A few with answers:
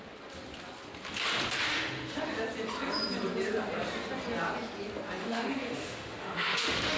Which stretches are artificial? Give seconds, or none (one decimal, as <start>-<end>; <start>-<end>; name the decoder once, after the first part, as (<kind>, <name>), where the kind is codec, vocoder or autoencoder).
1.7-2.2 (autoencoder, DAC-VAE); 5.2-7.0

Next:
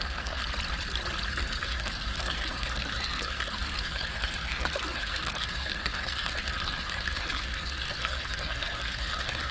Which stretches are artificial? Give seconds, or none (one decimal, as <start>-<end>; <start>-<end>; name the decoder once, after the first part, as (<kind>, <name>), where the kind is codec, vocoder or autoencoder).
0.0-0.4 (codec, SNAC); 1.3-9.5

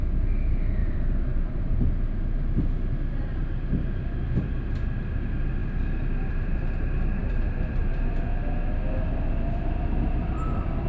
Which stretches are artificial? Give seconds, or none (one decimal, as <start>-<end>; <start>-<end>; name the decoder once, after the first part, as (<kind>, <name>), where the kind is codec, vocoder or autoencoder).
0.8-1.8 (vocoder, BigVGAN v2); 7.2-7.8

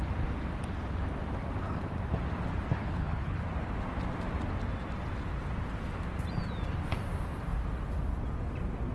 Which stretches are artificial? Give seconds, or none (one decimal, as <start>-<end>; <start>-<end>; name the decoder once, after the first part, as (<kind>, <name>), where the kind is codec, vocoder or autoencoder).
2.8-3.4 (codec, HILCodec)